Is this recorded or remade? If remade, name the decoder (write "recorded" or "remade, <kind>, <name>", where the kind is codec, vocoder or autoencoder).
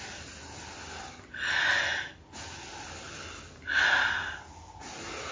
recorded